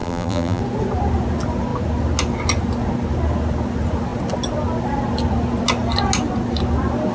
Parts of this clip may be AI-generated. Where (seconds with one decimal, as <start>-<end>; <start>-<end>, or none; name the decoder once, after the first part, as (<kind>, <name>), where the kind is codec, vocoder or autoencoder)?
0.0-0.6 (vocoder, BigVGAN v2)

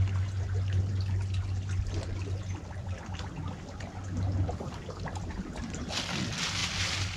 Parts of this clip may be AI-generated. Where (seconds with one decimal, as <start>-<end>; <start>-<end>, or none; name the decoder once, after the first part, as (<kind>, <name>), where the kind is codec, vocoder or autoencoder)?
none

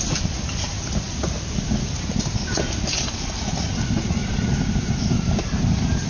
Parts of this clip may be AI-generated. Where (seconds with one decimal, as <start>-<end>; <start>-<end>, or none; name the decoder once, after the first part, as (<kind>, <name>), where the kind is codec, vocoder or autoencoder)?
0.0-6.1 (vocoder, BigVGAN v2)

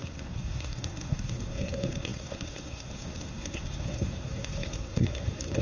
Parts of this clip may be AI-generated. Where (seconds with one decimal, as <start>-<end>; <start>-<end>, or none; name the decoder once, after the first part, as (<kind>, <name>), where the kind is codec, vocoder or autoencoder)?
0.0-5.6 (codec, SNAC)

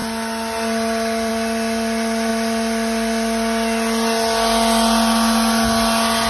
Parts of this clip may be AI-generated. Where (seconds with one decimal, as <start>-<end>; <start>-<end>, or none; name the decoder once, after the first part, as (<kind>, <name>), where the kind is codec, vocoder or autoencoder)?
none

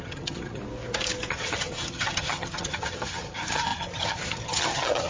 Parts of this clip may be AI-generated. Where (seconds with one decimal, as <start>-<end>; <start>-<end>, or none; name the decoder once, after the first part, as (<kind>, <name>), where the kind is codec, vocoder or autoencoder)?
0.0-0.6 (vocoder, HiFi-GAN); 1.3-5.1

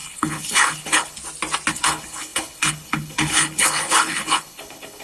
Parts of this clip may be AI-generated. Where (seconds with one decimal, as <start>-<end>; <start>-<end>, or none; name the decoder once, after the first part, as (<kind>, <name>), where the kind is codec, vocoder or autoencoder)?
0.0-1.2 (codec, HILCodec); 1.7-5.0